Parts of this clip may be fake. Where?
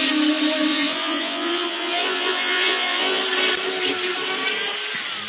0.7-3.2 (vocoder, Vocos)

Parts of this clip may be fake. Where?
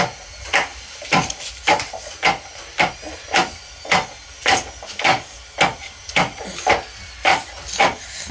none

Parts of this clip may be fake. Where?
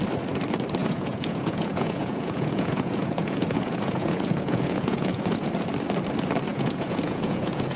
0.8-5.5 (vocoder, Vocos); 6.5-7.8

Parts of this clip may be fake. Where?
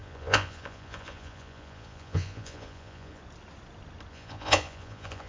0.0-3.2 (vocoder, Vocos); 4.1-5.3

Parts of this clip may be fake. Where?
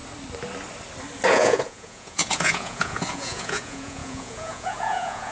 1.3-5.3 (vocoder, Vocos)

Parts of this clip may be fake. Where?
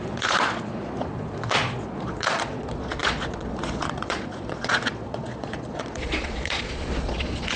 0.0-7.6 (vocoder, Vocos)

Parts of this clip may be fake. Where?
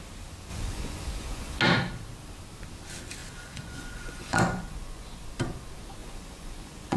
0.5-1.6 (vocoder, Vocos); 3.2-5.2; 6.0-7.0